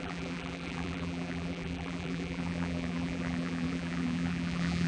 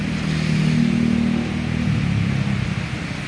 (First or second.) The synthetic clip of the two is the first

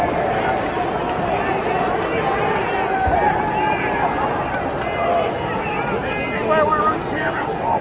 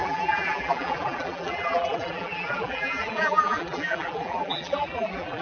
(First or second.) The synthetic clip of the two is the second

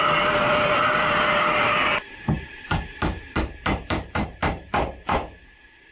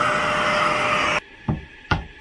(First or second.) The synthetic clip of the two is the first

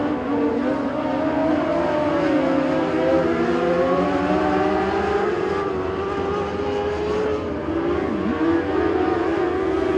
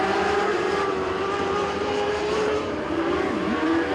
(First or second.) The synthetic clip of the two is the second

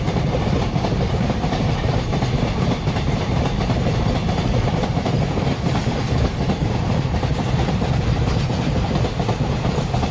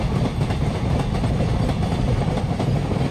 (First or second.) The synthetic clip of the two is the first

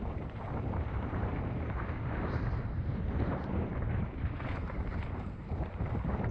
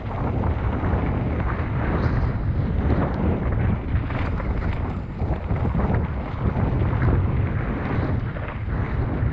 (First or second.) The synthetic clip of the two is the first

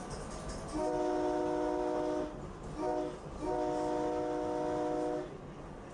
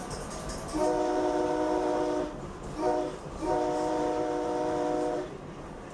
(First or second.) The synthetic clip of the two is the second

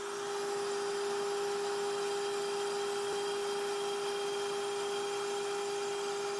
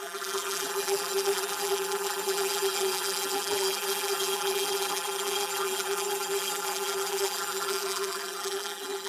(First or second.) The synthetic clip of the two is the second